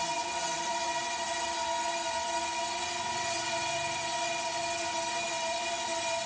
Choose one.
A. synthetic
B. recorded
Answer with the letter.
B